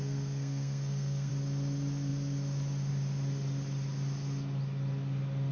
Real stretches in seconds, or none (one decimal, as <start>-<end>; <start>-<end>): 1.3-5.5